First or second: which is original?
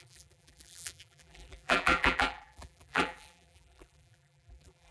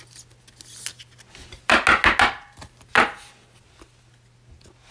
second